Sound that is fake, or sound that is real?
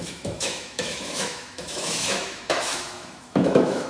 fake